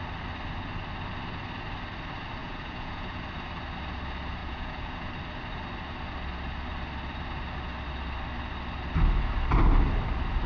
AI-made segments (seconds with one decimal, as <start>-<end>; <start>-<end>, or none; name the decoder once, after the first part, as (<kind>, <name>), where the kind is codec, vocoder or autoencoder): 2.4-3.2 (vocoder, Vocos); 4.4-5.1